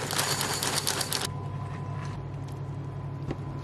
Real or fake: real